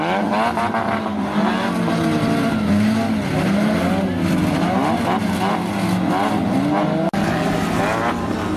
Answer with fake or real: real